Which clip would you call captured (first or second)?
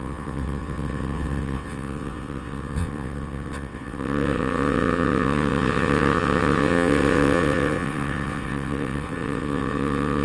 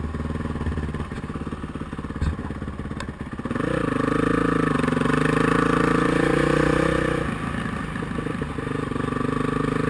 second